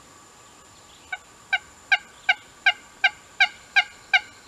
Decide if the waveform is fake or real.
real